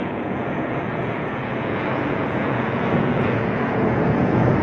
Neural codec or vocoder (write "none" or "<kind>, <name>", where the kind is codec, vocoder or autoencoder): vocoder, Vocos